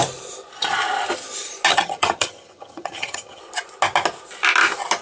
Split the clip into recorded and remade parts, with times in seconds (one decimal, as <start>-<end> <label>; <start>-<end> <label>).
0.0-1.7 recorded; 1.7-3.4 remade; 3.4-5.0 recorded